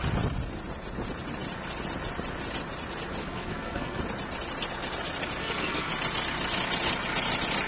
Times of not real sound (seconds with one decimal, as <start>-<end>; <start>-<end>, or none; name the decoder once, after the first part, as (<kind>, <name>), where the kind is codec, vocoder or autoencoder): 3.2-4.0 (codec, SNAC); 5.4-5.9